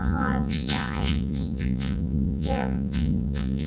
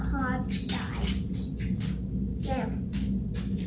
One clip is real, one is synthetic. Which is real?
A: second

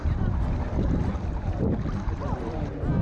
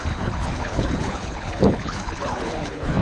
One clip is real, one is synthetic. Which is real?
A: first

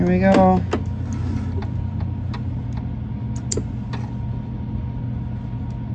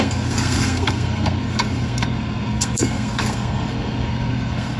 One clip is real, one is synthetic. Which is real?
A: first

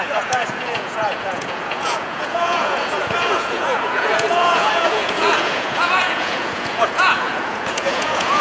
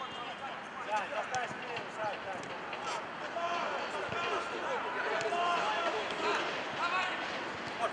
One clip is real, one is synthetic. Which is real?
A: second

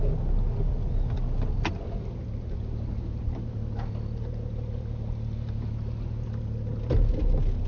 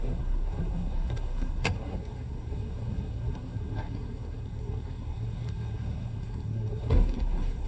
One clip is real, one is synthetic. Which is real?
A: first